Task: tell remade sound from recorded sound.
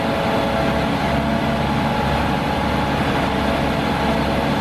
recorded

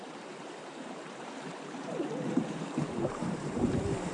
remade